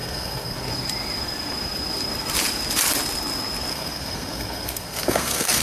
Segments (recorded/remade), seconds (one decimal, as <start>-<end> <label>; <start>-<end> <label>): 0.0-0.7 remade; 0.7-3.7 recorded; 3.7-5.6 remade